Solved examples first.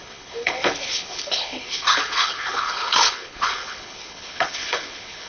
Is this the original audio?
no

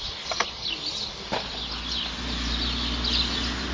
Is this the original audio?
yes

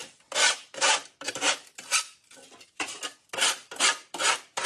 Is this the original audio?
yes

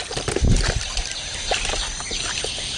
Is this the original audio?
yes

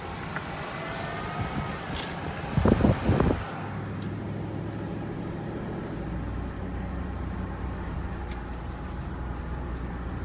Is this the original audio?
yes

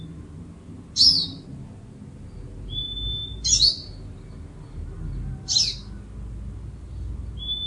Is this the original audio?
yes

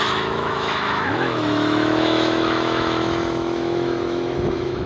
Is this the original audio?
no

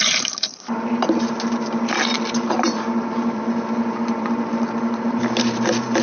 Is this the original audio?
no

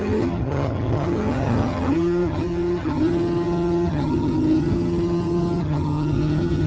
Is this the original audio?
no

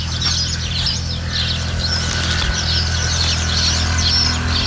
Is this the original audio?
yes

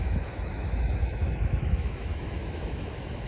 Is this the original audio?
no